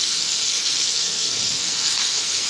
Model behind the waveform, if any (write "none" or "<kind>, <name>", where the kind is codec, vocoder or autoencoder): codec, SNAC